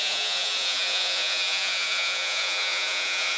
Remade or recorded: remade